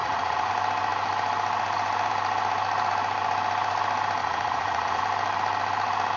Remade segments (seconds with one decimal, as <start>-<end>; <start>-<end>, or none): 0.0-0.5; 4.2-5.0